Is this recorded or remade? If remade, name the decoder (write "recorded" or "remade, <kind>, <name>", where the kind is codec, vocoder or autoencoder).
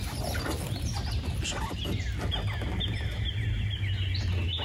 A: recorded